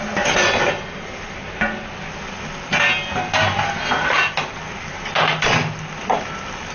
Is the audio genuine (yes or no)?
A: yes